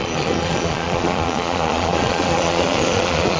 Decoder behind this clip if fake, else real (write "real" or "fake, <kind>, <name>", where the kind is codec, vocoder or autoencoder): fake, vocoder, Vocos